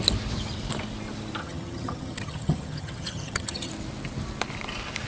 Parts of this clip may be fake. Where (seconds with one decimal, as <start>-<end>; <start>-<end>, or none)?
1.4-3.7